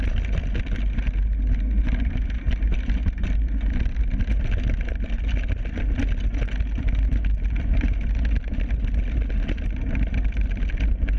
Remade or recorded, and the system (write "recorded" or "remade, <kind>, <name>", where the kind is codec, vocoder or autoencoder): recorded